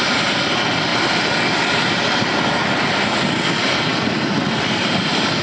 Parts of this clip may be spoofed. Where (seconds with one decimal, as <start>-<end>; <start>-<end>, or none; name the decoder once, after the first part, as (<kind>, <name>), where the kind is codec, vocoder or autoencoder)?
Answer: 0.0-0.9 (vocoder, BigVGAN v2); 2.0-5.4